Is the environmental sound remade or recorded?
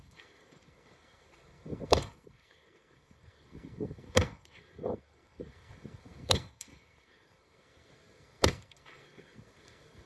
remade